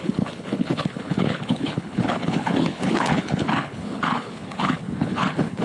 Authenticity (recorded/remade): remade